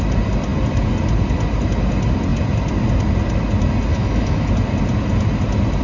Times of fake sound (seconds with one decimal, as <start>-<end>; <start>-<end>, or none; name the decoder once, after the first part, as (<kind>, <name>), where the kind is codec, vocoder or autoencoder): 3.9-4.5 (autoencoder, DAC-VAE)